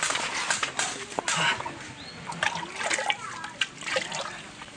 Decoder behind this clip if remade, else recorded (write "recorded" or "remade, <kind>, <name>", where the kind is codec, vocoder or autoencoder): recorded